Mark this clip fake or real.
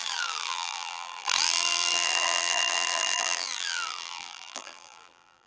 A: fake